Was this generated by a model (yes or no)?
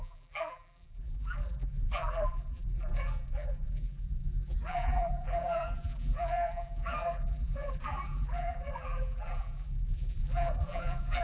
yes